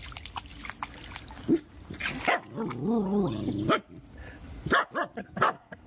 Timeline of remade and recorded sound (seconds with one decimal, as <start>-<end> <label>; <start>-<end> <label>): 0.0-5.2 recorded; 5.2-5.9 remade